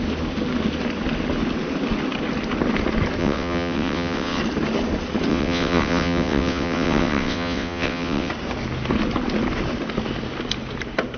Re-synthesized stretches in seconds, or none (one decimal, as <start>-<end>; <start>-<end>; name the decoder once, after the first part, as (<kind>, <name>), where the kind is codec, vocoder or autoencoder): 3.2-4.4 (vocoder, WaveNeXt); 5.3-8.3

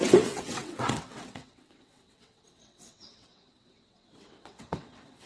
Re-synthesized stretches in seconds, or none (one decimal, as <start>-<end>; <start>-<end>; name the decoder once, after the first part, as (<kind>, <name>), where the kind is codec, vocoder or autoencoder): 0.0-5.3 (vocoder, WaveNeXt)

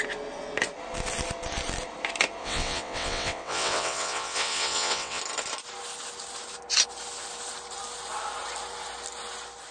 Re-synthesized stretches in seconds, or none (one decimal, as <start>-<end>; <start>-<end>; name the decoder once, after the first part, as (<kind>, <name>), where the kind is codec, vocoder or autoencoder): 2.4-5.2 (vocoder, WaveNeXt)

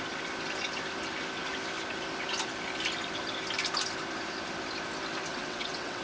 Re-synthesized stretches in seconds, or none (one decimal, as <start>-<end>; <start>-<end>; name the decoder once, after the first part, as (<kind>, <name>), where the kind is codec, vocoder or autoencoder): 5.3-6.0 (vocoder, WaveNeXt)

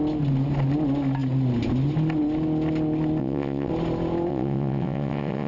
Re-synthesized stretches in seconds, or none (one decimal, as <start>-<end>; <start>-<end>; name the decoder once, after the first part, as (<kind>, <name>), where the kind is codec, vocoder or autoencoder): 3.2-3.7 (vocoder, WaveNeXt); 4.3-5.5

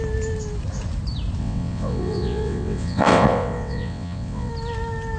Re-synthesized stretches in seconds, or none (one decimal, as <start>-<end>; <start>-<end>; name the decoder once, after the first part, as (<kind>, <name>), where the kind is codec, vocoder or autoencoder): 1.4-4.5 (vocoder, WaveNeXt)

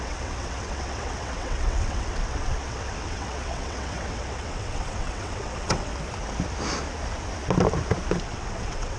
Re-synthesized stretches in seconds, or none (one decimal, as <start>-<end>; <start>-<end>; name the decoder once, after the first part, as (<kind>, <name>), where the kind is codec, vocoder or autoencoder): 0.0-5.9 (vocoder, WaveNeXt); 8.2-9.0